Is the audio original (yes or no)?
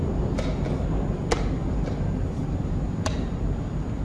yes